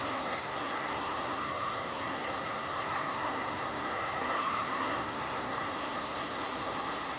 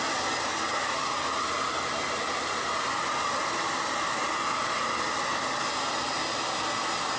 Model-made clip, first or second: first